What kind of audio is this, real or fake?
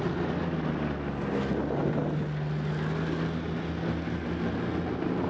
real